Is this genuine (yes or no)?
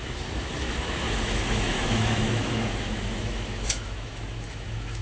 no